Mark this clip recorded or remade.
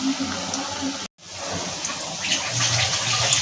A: recorded